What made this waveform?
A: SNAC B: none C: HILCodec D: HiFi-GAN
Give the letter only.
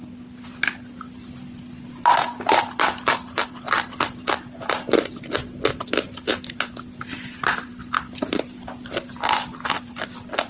B